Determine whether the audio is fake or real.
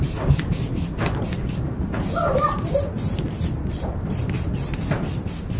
fake